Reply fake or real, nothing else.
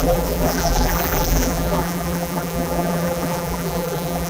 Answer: fake